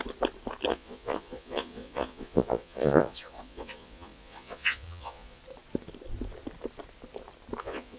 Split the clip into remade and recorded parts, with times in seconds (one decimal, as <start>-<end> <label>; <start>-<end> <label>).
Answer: 0.0-0.7 recorded; 0.7-5.4 remade; 5.4-7.6 recorded; 7.6-8.0 remade